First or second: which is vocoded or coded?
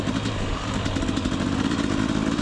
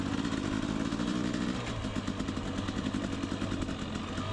first